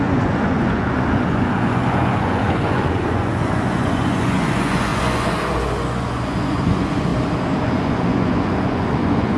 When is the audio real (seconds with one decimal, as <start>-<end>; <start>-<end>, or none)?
7.1-7.6